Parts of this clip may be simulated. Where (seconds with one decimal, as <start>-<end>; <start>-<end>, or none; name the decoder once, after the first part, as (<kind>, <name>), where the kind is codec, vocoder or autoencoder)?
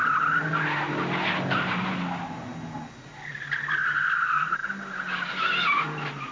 none